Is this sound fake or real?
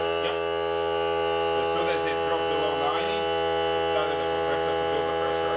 real